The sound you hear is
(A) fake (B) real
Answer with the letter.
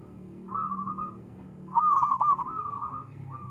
A